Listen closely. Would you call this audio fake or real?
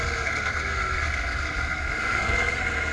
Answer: fake